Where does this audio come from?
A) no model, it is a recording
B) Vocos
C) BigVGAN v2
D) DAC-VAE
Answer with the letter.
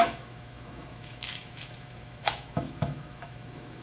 D